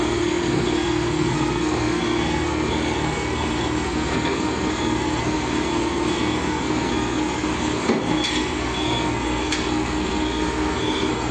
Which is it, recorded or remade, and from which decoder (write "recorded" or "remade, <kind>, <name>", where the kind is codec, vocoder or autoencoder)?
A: remade, codec, SNAC